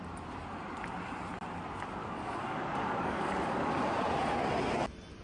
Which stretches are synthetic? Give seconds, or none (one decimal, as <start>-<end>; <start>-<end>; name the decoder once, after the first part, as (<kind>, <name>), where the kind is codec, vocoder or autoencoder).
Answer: 2.0-3.7 (codec, DAC)